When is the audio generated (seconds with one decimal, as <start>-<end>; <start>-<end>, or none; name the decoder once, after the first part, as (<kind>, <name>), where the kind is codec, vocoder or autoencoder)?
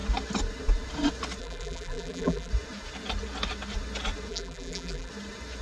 1.4-2.5 (vocoder, BigVGAN v2); 4.3-5.1